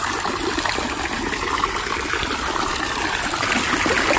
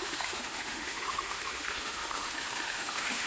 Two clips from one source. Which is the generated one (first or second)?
second